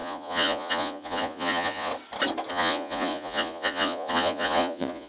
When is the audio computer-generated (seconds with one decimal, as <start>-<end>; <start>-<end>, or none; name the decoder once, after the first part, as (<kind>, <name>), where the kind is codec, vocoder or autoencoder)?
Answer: 0.0-1.9 (vocoder, Vocos); 2.5-5.1